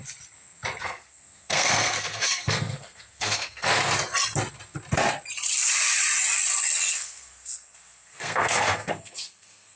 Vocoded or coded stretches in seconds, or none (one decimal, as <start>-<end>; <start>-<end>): 0.8-3.7; 6.9-9.8